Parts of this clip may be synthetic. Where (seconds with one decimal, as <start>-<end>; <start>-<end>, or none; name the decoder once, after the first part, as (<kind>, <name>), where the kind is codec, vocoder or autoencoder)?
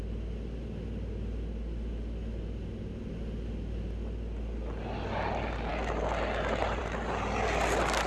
none